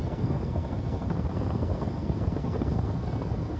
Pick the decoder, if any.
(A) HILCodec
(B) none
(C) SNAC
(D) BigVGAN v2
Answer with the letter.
C